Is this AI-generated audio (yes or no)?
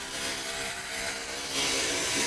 no